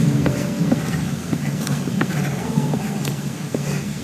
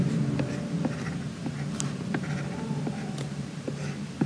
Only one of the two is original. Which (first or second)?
second